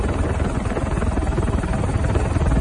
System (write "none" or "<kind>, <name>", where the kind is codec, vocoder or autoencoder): none